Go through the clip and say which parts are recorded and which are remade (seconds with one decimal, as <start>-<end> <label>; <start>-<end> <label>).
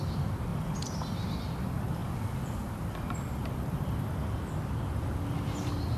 0.0-6.0 recorded